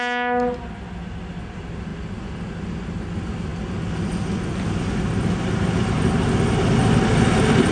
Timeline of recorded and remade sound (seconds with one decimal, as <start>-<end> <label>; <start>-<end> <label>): 0.0-7.7 recorded